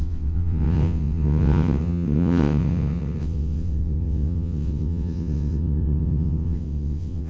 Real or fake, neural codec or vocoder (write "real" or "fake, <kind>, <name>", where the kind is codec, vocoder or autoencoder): fake, vocoder, WaveNeXt